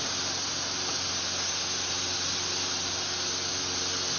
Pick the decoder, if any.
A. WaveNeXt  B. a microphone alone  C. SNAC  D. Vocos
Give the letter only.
B